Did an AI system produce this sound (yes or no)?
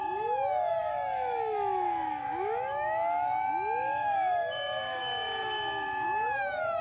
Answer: yes